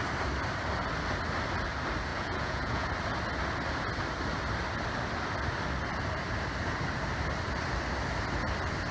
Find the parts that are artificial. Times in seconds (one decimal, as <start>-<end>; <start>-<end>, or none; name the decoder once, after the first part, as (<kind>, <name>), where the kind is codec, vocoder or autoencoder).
2.1-2.9 (vocoder, Vocos)